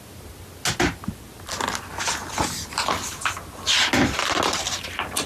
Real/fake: real